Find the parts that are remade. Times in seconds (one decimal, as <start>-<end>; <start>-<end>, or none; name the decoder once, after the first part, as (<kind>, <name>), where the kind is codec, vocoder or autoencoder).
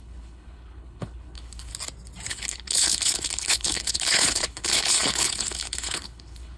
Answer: 0.0-1.7 (codec, HILCodec); 2.3-6.6